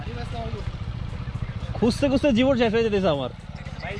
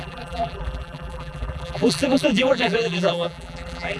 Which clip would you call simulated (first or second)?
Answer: second